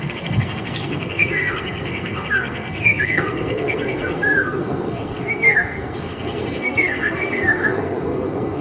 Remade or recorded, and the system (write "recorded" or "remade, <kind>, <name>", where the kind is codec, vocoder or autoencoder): remade, codec, SNAC